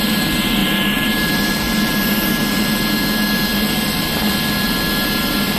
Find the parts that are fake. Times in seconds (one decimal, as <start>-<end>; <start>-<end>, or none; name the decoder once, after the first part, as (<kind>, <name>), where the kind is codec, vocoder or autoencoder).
0.6-2.3 (vocoder, BigVGAN v2)